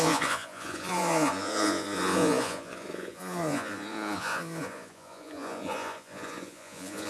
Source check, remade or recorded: remade